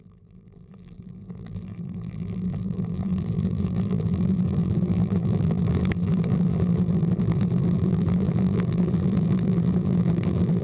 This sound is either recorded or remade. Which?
remade